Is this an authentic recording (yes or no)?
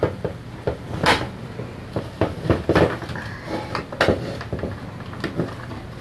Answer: yes